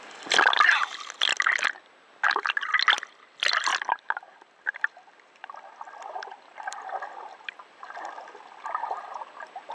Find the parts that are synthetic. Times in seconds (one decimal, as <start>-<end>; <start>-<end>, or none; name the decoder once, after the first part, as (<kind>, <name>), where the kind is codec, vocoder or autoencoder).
0.0-1.3 (vocoder, BigVGAN v2); 3.2-9.7